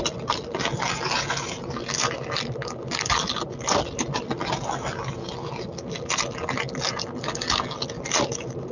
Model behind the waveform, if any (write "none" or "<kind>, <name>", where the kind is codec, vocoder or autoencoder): none